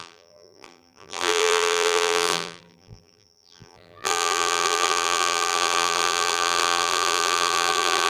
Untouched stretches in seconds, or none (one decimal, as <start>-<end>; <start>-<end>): none